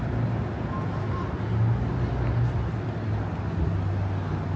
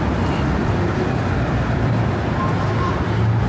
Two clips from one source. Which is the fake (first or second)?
second